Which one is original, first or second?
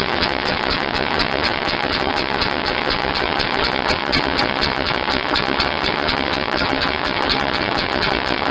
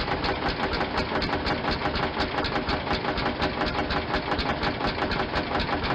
second